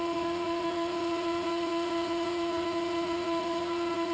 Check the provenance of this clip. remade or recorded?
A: remade